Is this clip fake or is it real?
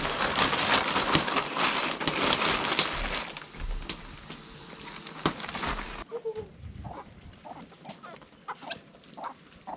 real